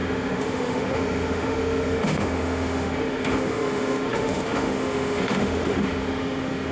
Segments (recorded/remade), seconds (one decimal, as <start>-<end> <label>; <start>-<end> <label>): 0.0-6.7 remade